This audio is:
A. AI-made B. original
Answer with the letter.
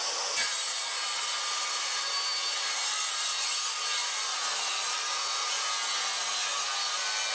B